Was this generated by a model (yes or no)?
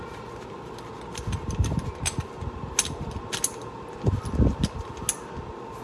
no